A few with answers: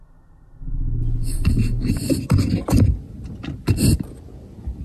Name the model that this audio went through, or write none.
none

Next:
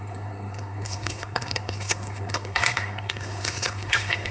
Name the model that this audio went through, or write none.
codec, SNAC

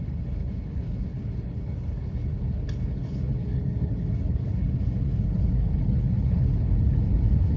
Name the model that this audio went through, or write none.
codec, HILCodec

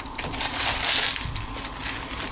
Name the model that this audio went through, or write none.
none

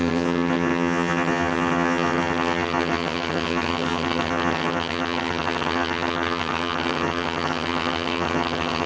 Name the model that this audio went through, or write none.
vocoder, HiFi-GAN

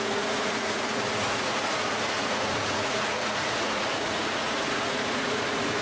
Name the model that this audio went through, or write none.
vocoder, Vocos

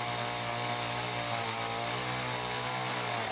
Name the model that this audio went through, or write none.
none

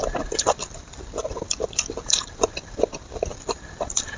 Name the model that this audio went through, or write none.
vocoder, BigVGAN v2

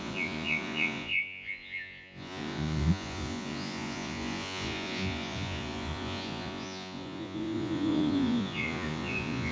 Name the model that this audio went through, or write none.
vocoder, Vocos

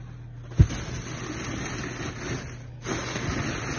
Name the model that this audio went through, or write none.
none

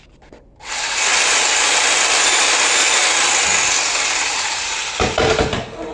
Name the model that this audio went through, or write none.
none